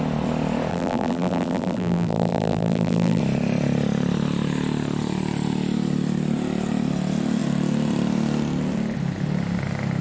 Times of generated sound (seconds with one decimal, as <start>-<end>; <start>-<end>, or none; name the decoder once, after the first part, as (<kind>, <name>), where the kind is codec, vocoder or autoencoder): 0.7-3.2 (vocoder, BigVGAN v2)